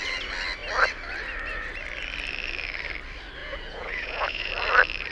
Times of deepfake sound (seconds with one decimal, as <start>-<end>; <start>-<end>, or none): 3.4-4.5